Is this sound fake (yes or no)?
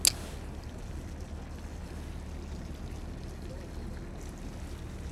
no